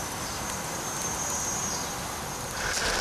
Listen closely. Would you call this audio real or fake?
real